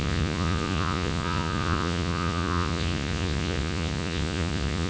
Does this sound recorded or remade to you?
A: remade